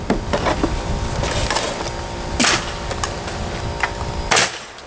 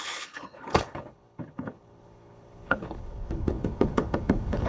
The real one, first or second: first